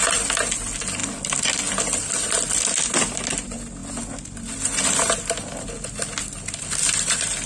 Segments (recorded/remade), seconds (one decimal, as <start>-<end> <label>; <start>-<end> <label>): 0.0-7.5 recorded

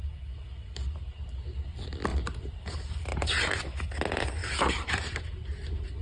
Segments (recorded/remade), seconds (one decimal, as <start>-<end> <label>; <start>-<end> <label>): 0.0-2.1 recorded; 2.1-3.5 remade; 3.5-4.4 recorded; 4.4-6.0 remade

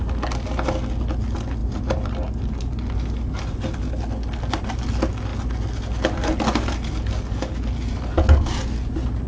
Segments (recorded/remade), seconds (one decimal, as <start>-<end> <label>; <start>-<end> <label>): 0.0-1.6 recorded; 1.6-2.6 remade; 2.6-9.3 recorded

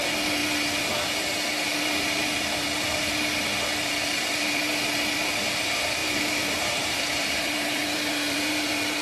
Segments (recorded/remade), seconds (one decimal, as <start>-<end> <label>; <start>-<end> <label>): 0.0-6.0 recorded; 6.0-8.5 remade; 8.5-9.0 recorded

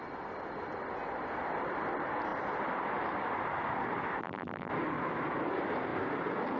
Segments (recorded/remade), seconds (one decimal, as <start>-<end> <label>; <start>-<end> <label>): 0.0-4.2 recorded; 4.2-4.7 remade; 4.7-6.6 recorded

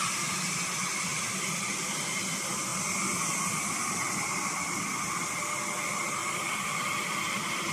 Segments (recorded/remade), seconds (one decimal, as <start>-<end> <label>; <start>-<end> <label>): 0.0-1.1 recorded; 1.1-2.2 remade; 2.2-6.2 recorded; 6.2-7.7 remade

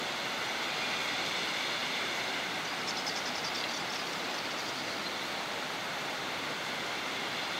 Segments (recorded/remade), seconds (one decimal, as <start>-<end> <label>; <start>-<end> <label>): 0.0-1.8 recorded; 1.8-3.4 remade; 3.4-7.6 recorded

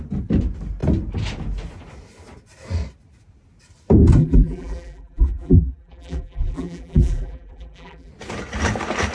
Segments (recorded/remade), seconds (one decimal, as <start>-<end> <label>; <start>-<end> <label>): 0.0-4.2 recorded; 4.2-8.1 remade; 8.1-9.1 recorded